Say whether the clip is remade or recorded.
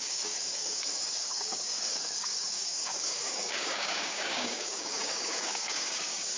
remade